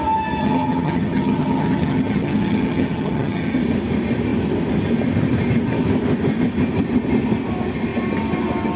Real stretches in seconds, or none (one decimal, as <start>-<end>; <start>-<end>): 0.0-0.4; 3.5-8.8